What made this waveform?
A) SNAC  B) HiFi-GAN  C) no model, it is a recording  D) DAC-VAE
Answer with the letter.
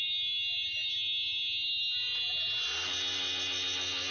C